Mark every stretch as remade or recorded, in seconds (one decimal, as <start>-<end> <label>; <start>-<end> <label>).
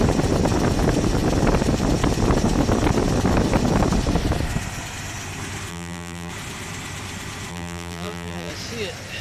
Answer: 0.0-5.7 recorded; 5.7-6.3 remade; 6.3-7.5 recorded; 7.5-8.5 remade; 8.5-9.2 recorded